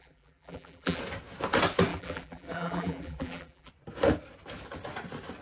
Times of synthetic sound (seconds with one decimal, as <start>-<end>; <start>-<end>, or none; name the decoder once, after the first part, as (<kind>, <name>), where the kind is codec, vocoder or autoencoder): 0.0-1.0 (vocoder, BigVGAN v2); 1.9-3.7